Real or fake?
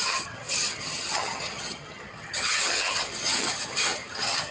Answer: fake